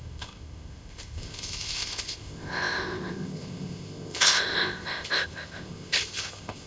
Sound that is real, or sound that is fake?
fake